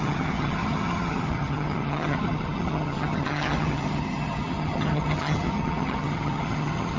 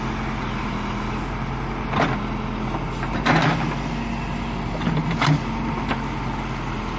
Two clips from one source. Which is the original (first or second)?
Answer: second